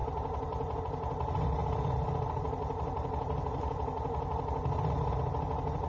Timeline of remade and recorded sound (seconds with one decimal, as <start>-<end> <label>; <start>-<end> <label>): 0.0-5.9 recorded